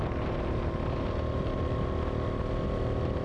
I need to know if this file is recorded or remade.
recorded